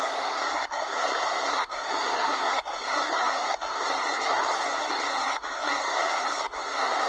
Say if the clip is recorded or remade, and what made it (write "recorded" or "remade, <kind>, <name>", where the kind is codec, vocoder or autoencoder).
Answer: remade, codec, SNAC